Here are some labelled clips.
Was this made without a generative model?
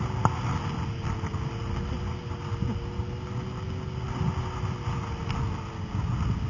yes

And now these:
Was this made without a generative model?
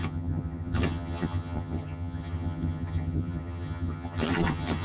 no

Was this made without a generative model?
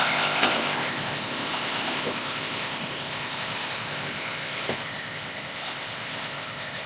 no